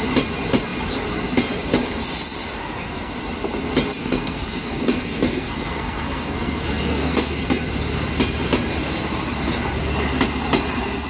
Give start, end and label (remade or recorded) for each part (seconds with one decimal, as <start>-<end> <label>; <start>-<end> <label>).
0.0-2.6 recorded; 2.6-3.1 remade; 3.1-4.0 recorded; 4.0-7.7 remade; 7.7-11.1 recorded